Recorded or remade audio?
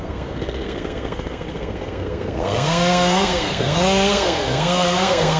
remade